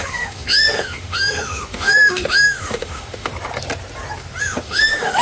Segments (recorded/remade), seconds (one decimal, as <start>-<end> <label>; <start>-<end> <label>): 0.0-3.3 remade; 3.3-4.4 recorded; 4.4-5.2 remade